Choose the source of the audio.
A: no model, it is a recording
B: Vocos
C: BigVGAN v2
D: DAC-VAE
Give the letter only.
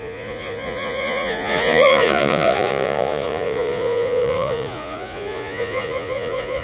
B